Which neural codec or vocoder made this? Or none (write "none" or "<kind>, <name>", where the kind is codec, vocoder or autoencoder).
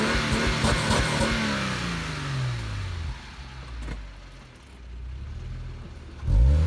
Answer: none